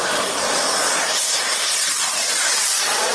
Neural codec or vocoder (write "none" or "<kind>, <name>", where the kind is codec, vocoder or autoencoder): none